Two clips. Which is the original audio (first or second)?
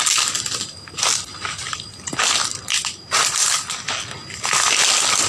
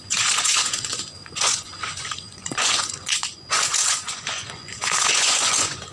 first